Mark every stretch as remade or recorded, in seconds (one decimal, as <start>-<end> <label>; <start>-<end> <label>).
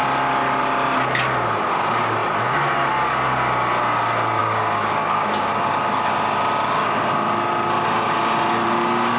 0.0-4.4 recorded; 4.4-5.5 remade; 5.5-9.2 recorded